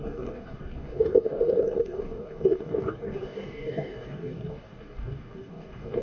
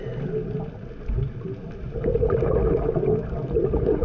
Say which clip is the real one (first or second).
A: second